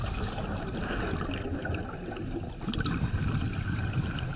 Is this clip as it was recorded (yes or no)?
yes